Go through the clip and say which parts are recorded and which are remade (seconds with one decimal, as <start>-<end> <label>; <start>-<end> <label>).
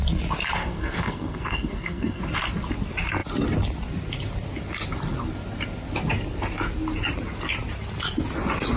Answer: 0.0-0.6 recorded; 0.6-2.2 remade; 2.2-8.8 recorded